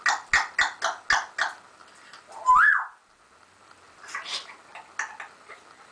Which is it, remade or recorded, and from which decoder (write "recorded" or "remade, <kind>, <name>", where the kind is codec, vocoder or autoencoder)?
recorded